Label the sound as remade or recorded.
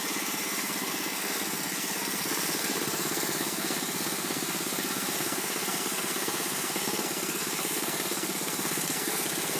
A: remade